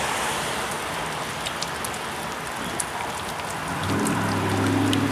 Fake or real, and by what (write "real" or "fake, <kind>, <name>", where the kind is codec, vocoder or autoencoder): real